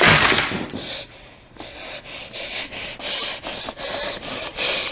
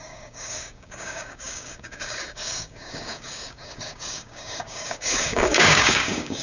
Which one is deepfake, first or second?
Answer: second